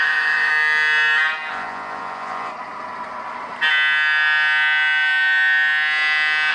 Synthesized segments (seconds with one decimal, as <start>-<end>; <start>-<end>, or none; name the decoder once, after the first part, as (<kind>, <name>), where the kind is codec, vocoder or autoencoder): 0.0-0.5 (vocoder, Vocos); 1.5-2.5